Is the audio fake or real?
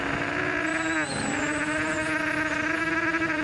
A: real